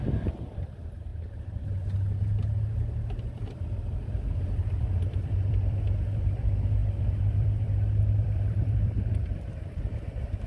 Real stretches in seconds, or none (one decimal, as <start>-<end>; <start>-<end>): 1.1-4.5